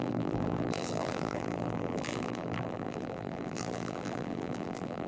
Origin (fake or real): fake